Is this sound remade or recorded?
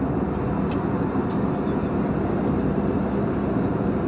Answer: recorded